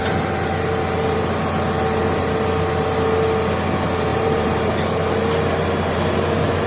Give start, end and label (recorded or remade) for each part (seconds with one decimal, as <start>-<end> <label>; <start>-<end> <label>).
0.0-4.1 recorded; 4.1-4.7 remade; 4.7-6.7 recorded

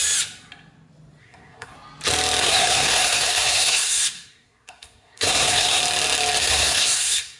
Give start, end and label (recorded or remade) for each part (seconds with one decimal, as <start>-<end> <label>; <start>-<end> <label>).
0.0-1.2 recorded; 1.2-1.7 remade; 1.7-2.4 recorded; 2.4-5.8 remade; 5.8-6.4 recorded; 6.4-7.4 remade

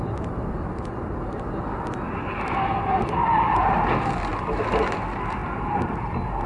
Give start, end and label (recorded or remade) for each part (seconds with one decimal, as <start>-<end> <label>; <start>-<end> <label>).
0.0-6.5 recorded

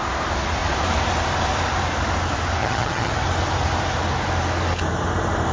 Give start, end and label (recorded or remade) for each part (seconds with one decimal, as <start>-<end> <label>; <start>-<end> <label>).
0.0-2.6 recorded; 2.6-3.1 remade; 3.1-5.5 recorded

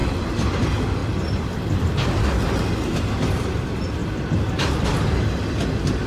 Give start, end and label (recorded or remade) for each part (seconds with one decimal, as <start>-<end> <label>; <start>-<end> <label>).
0.0-1.0 recorded; 1.0-2.1 remade; 2.1-4.0 recorded; 4.0-4.7 remade; 4.7-6.1 recorded

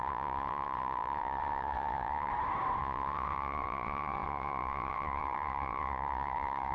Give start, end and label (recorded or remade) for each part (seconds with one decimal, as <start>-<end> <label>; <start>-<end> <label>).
0.0-2.3 remade; 2.3-2.8 recorded; 2.8-6.7 remade

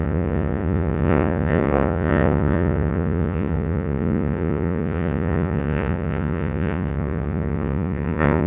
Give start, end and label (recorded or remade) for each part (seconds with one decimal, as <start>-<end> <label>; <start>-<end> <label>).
0.0-8.5 remade